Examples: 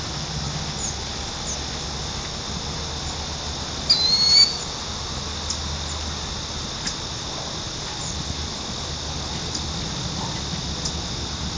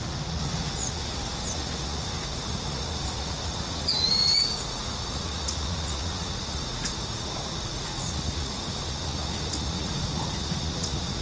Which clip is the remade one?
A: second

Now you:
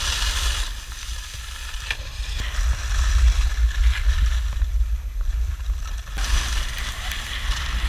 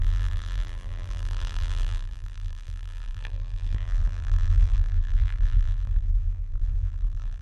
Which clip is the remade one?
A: second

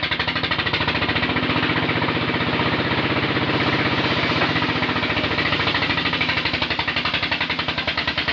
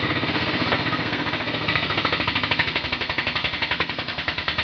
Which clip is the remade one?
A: second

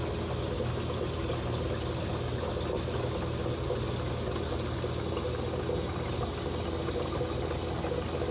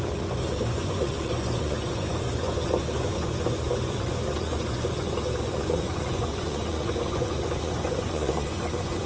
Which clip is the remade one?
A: second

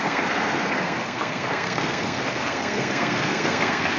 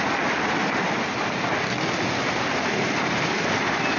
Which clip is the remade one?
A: first